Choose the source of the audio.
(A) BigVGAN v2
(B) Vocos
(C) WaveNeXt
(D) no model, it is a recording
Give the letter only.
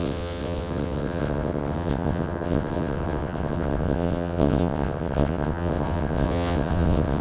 C